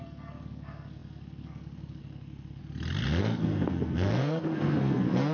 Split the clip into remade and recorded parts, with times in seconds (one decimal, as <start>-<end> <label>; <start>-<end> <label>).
0.0-2.6 remade; 2.6-3.2 recorded; 3.2-5.3 remade